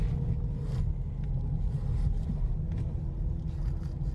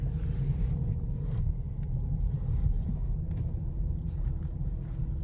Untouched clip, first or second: first